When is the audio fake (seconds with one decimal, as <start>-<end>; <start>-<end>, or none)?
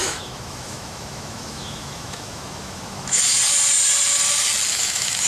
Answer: 0.0-3.2; 4.7-5.3